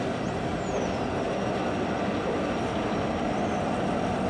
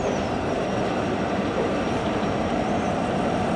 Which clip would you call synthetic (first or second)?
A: second